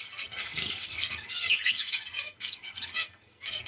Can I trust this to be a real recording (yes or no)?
no